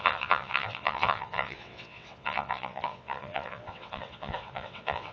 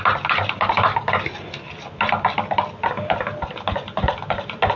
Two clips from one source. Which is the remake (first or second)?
first